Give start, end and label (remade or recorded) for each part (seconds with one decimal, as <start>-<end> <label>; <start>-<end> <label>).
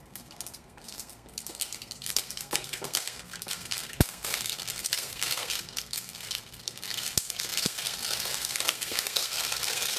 0.0-10.0 remade